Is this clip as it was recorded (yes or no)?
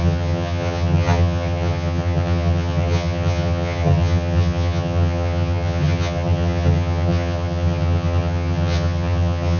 no